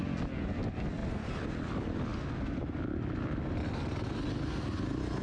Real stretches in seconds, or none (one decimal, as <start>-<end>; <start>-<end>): 0.0-5.2